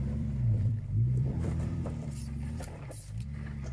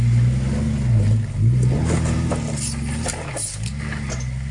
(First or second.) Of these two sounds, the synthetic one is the first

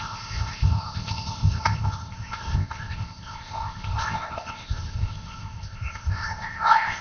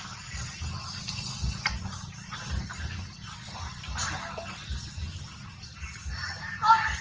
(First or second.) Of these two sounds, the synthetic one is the first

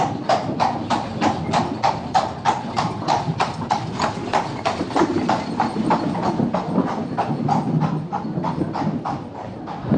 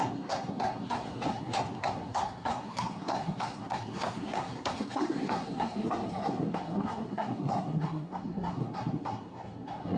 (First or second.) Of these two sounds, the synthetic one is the second